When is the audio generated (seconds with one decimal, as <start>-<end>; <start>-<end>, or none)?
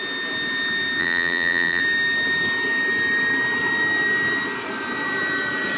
1.0-1.8